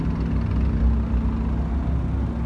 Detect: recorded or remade recorded